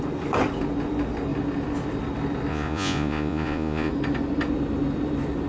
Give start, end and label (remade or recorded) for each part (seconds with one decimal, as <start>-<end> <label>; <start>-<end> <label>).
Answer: 0.0-2.5 recorded; 2.5-3.9 remade; 3.9-5.5 recorded